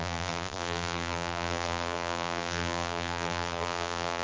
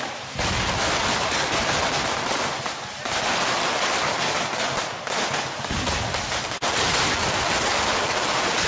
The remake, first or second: first